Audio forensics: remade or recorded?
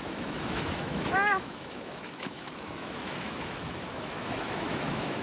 remade